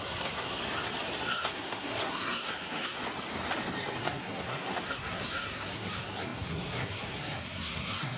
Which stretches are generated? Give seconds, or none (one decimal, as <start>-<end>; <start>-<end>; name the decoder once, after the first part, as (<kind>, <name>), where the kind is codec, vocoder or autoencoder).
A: 0.0-0.6 (codec, SNAC); 1.3-3.0; 4.0-8.2